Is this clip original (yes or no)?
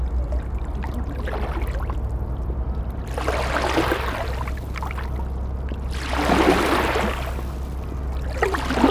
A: yes